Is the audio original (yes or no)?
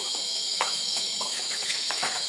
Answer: no